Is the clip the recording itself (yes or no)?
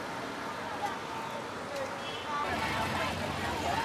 yes